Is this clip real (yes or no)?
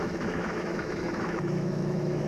no